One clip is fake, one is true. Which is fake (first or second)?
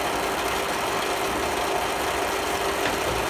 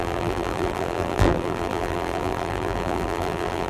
second